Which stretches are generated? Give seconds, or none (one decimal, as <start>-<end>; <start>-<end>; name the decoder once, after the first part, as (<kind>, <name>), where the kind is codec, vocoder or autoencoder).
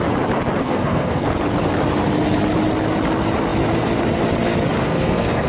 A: 0.6-1.3 (codec, SNAC); 4.8-5.5